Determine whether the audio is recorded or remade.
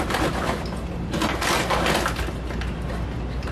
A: recorded